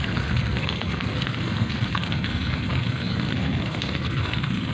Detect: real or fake fake